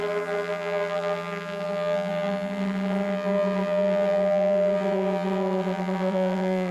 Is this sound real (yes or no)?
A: no